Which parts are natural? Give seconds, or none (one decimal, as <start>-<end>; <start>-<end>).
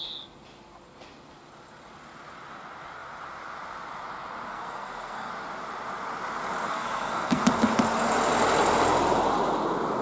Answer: 0.0-4.5; 5.3-6.7; 7.4-10.0